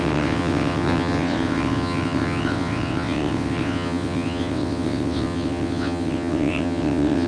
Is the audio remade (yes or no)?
yes